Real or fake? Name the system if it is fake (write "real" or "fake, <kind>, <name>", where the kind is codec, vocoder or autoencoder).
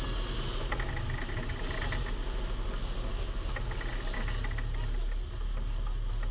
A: real